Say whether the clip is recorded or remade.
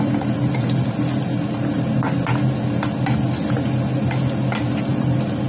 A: recorded